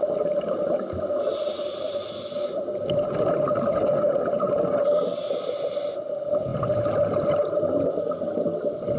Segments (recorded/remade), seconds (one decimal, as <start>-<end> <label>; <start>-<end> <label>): 0.0-9.0 recorded